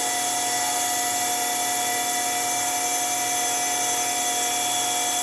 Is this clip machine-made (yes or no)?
no